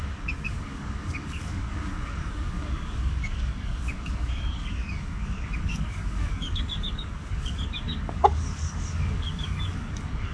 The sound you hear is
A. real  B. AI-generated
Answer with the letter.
B